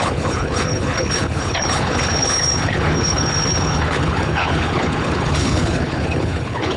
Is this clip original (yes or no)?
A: no